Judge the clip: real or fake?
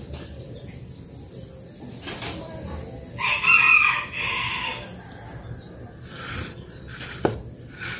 real